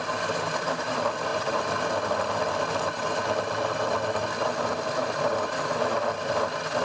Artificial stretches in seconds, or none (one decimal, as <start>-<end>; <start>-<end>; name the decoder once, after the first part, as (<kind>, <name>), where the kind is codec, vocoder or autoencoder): none